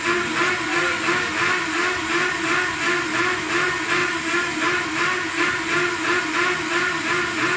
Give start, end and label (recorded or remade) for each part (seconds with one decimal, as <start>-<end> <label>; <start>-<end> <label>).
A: 0.0-7.6 recorded